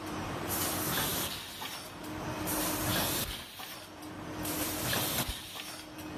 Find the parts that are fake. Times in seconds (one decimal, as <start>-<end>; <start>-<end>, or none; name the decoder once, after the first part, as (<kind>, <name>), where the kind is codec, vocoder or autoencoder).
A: none